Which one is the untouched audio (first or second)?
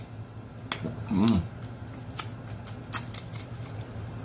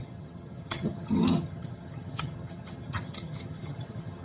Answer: first